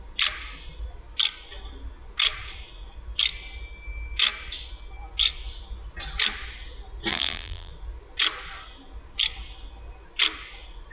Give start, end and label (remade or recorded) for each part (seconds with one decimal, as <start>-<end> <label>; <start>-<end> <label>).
0.0-7.1 recorded; 7.1-7.7 remade; 7.7-10.9 recorded